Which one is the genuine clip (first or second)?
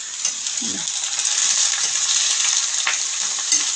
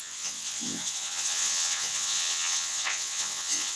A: first